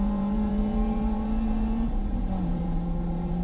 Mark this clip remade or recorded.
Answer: remade